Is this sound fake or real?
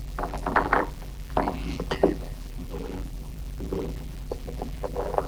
fake